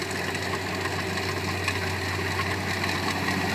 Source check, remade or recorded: recorded